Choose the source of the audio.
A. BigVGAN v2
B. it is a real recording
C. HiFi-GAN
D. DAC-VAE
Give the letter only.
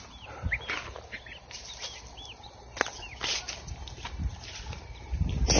B